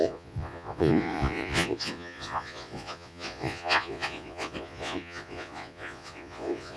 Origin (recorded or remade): remade